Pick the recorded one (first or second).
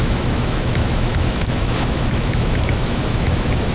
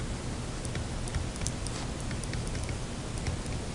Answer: second